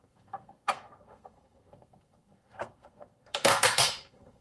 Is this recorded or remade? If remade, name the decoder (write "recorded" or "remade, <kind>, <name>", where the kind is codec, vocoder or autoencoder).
remade, codec, SNAC